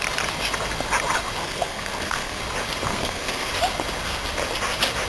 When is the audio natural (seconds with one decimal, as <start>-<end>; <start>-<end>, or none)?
0.0-1.4; 2.4-2.9; 3.5-5.1